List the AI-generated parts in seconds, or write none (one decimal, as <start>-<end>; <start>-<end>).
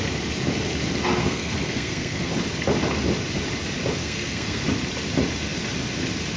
1.2-2.3; 4.0-4.6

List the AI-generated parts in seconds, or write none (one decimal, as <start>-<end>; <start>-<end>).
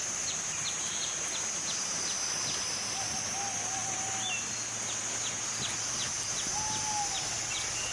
none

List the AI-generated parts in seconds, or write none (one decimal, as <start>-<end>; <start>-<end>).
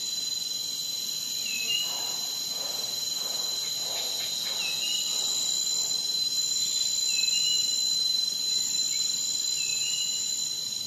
9.7-10.3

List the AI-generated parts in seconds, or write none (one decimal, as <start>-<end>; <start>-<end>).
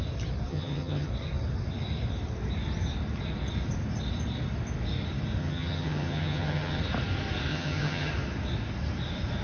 0.5-1.1; 5.4-6.8; 7.5-8.1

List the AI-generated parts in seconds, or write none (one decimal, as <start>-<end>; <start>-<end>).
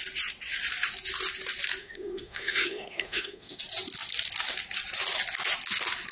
1.8-3.6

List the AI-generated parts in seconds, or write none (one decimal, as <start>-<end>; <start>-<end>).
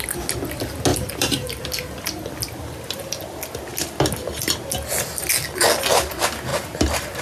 0.9-1.6; 6.5-7.2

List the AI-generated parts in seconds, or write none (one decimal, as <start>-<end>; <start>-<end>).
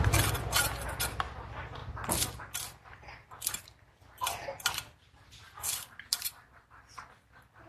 none